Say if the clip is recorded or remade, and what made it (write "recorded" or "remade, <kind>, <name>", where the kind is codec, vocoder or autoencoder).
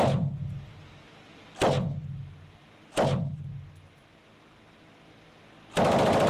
recorded